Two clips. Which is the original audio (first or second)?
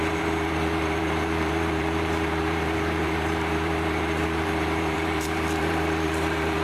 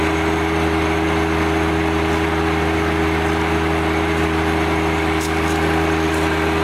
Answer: second